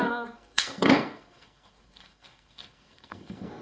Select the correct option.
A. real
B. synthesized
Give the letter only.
B